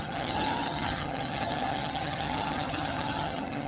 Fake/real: fake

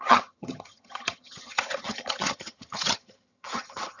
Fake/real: fake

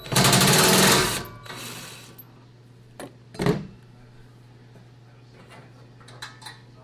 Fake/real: real